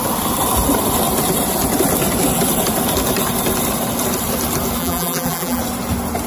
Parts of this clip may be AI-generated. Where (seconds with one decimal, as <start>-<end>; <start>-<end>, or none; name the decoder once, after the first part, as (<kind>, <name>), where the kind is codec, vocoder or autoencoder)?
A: 4.8-5.6 (vocoder, BigVGAN v2)